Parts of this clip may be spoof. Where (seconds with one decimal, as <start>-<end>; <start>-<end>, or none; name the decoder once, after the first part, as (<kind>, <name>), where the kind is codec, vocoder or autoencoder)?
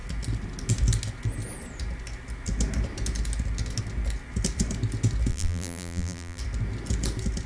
5.3-6.4 (vocoder, BigVGAN v2)